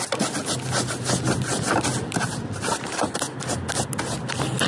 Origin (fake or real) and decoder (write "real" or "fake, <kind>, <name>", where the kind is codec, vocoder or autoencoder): real